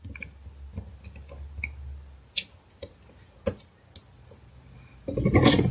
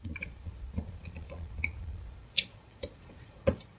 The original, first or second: first